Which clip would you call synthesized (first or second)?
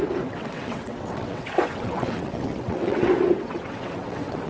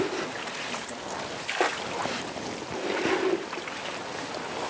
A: first